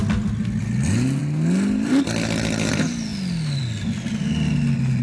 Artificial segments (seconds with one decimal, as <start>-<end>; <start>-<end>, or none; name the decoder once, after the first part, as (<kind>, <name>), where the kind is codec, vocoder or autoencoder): none